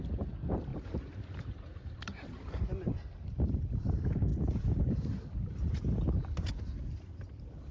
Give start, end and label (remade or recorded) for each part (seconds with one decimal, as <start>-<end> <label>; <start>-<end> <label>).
0.0-0.7 recorded; 0.7-2.5 remade; 2.5-7.7 recorded